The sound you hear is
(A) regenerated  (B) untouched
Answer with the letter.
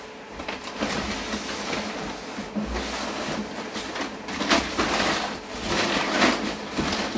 B